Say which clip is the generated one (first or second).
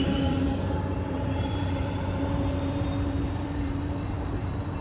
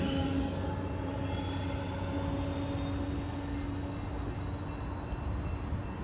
first